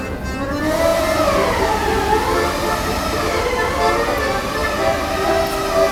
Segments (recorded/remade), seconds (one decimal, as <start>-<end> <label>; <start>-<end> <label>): 0.0-4.6 recorded; 4.6-5.3 remade; 5.3-5.9 recorded